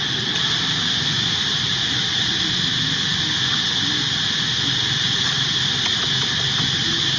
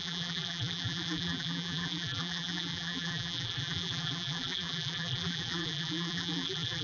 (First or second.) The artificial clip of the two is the second